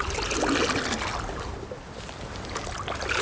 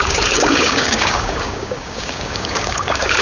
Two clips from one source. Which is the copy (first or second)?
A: second